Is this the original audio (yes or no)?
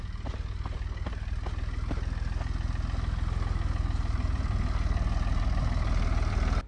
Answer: yes